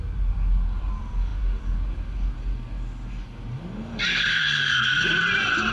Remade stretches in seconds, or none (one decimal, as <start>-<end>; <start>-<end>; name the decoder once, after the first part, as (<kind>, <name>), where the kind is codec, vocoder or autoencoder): 4.1-5.0 (codec, SNAC)